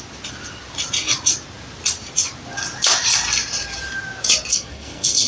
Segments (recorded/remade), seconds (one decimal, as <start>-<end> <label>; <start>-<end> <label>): 0.0-4.5 recorded; 4.5-5.3 remade